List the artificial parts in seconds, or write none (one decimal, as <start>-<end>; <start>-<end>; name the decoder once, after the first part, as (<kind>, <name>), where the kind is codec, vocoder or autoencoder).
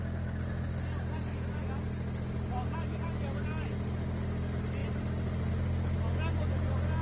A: none